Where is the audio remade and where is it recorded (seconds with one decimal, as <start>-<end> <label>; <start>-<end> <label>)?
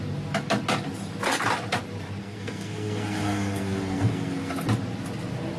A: 0.0-2.2 recorded; 2.2-4.5 remade; 4.5-5.6 recorded